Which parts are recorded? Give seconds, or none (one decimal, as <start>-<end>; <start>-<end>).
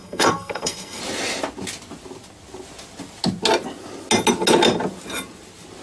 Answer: 1.0-5.8